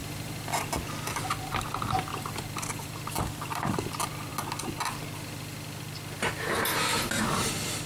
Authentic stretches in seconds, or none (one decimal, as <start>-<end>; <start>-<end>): 0.7-2.1; 3.9-7.9